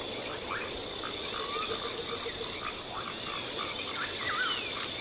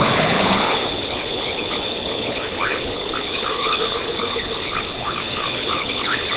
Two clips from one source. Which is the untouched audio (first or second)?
first